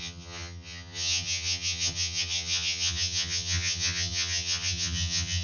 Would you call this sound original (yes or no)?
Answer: no